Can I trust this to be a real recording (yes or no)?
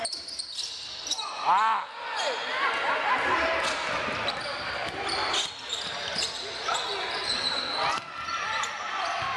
yes